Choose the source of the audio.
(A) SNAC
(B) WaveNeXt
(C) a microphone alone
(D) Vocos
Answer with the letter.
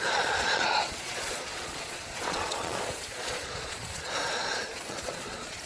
D